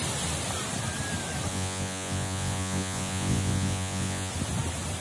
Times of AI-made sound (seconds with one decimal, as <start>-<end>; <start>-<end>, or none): 1.5-4.3